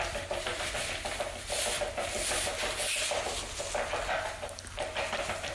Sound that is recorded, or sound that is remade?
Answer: recorded